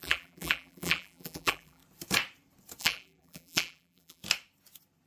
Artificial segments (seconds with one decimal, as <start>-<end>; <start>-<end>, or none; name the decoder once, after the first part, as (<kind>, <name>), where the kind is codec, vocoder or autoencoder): 0.0-1.8 (vocoder, BigVGAN v2); 2.8-4.2